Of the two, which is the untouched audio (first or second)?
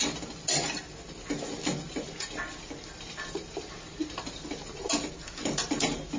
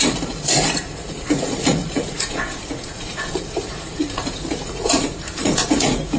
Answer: first